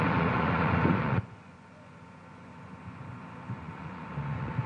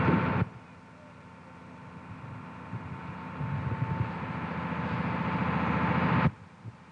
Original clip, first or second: second